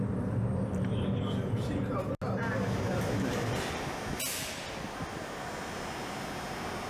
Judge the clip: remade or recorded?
recorded